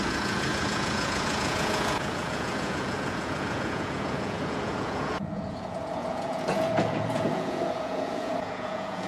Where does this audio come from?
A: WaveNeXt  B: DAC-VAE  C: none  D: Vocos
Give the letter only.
D